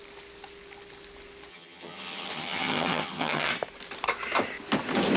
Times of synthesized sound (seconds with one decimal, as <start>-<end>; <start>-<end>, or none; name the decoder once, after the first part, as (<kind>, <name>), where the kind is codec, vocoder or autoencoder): 1.5-3.5 (vocoder, HiFi-GAN)